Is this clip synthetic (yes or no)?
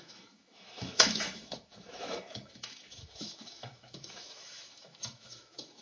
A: yes